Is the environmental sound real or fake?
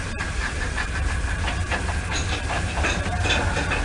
real